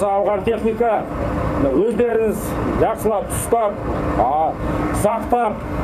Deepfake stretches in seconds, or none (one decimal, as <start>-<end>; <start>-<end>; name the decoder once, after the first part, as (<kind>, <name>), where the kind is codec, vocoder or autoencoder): 0.0-1.0 (codec, SNAC); 1.7-2.1; 3.1-3.8; 4.6-5.8